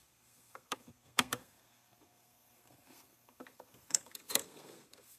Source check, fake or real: fake